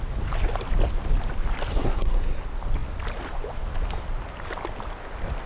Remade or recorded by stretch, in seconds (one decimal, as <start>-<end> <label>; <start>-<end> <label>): 0.0-1.7 recorded; 1.7-2.4 remade; 2.4-5.5 recorded